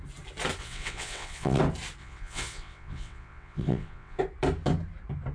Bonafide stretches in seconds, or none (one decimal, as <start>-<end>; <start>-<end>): 0.0-0.6; 1.6-2.0; 4.2-5.3